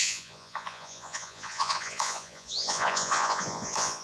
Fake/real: fake